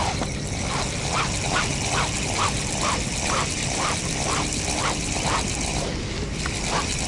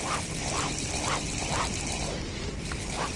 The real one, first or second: first